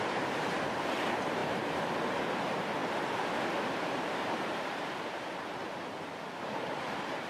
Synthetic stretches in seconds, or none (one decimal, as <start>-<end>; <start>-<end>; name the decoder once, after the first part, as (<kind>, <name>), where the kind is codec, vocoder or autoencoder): 0.0-2.8 (vocoder, BigVGAN v2); 3.4-5.6; 6.4-7.3